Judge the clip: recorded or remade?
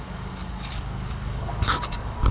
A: remade